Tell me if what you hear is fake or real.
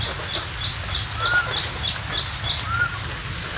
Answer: real